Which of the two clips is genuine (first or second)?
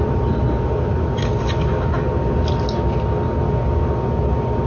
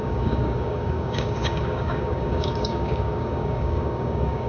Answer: first